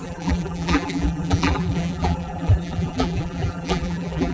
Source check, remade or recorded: remade